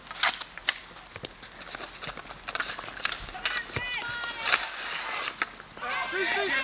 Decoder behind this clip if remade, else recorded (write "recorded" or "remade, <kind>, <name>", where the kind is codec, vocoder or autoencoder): recorded